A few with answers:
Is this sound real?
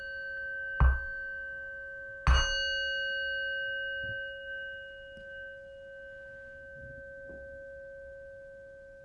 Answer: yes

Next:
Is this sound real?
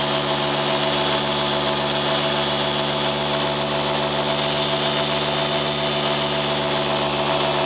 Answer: yes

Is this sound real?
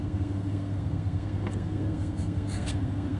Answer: no